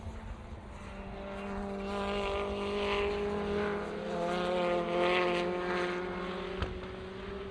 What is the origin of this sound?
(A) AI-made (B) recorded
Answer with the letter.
B